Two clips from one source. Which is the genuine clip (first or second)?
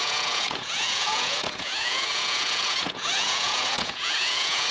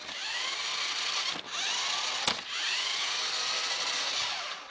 second